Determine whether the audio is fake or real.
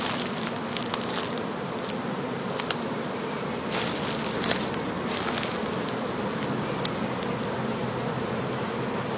real